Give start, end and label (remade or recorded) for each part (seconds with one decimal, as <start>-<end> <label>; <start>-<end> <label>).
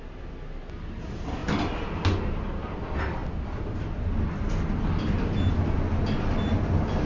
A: 0.0-7.1 recorded